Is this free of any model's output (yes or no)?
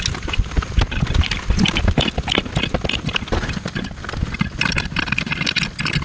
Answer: yes